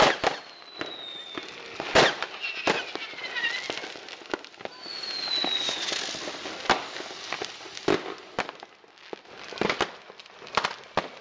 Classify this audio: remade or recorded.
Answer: recorded